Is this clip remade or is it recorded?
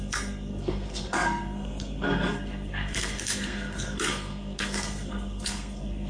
remade